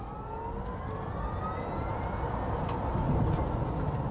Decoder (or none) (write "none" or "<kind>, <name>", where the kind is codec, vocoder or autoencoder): none